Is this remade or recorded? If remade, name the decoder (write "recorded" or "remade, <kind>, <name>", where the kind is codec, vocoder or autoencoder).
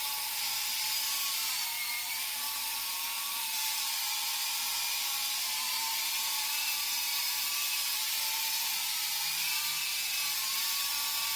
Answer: remade, vocoder, BigVGAN v2